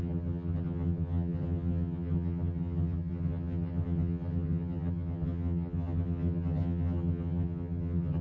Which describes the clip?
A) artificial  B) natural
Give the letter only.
A